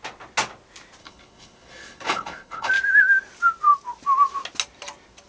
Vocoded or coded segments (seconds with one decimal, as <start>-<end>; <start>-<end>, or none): 1.0-2.7